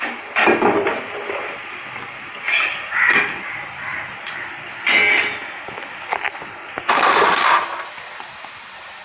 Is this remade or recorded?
recorded